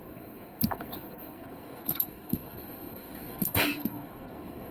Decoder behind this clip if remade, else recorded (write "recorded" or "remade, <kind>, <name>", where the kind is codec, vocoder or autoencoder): remade, codec, SNAC